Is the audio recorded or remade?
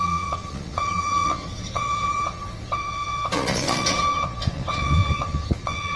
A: remade